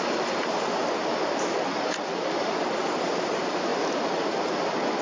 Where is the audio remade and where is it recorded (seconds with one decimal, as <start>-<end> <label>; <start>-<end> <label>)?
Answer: 0.0-5.0 remade